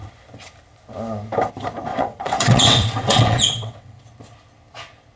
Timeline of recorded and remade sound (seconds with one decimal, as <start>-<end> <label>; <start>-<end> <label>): 0.0-1.9 recorded; 1.9-4.1 remade; 4.1-5.2 recorded